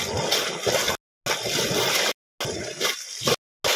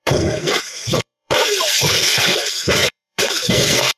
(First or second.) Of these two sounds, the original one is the first